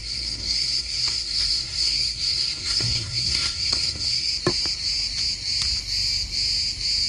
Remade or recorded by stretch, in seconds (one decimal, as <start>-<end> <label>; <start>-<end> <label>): 0.0-4.3 remade; 4.3-7.1 recorded